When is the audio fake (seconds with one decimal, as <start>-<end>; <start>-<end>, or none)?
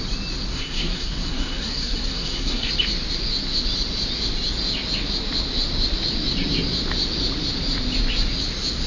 0.5-2.7